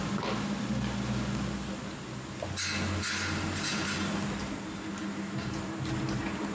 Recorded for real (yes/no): yes